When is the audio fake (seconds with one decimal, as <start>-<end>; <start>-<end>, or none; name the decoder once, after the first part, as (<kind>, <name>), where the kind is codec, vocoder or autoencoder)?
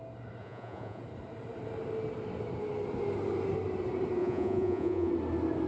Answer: 0.4-1.0 (vocoder, Vocos); 4.2-5.1